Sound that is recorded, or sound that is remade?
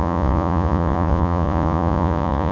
remade